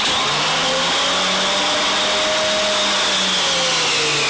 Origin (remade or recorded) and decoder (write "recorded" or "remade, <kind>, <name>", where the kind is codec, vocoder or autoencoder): recorded